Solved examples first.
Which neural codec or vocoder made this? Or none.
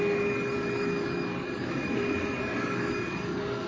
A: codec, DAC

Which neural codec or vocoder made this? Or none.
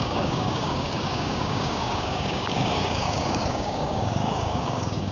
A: codec, DAC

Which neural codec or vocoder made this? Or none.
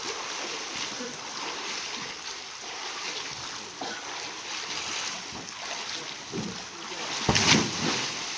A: none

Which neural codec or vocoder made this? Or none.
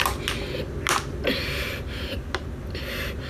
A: none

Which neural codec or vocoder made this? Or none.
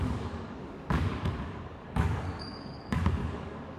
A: codec, DAC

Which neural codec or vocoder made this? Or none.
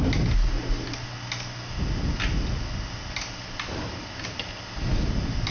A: none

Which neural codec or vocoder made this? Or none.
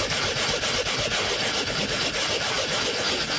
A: none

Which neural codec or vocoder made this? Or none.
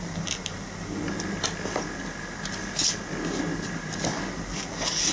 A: none